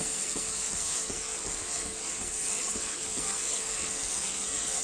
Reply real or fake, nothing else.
fake